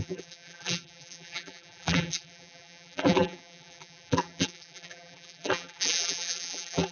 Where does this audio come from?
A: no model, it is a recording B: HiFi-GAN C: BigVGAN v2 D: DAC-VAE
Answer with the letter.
C